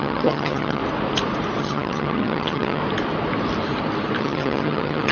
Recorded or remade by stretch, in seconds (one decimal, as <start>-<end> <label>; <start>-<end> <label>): 0.0-0.8 remade; 0.8-1.6 recorded; 1.6-2.8 remade; 2.8-4.2 recorded; 4.2-5.1 remade